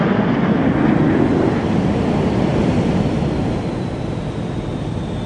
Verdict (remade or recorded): recorded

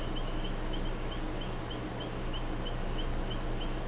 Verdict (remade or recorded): recorded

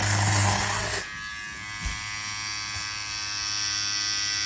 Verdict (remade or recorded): recorded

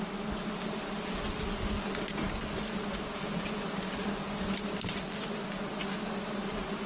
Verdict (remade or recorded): recorded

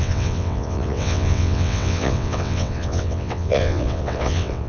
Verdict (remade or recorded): remade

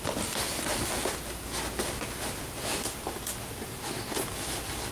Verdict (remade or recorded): recorded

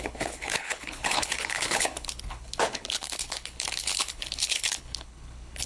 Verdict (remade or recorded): remade